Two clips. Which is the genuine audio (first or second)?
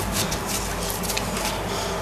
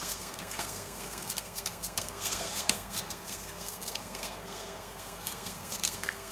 first